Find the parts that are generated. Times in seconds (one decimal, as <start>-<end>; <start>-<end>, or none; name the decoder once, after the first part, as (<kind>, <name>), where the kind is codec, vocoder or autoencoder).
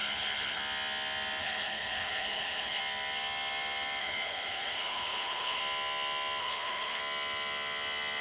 0.0-0.6 (codec, HILCodec); 1.4-2.8; 4.0-5.6; 6.4-7.0